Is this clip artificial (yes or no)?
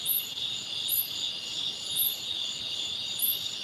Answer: no